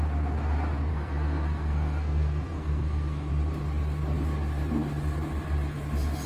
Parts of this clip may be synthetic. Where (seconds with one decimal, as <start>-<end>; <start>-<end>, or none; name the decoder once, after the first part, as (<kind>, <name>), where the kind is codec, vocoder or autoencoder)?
0.9-3.3 (codec, SNAC)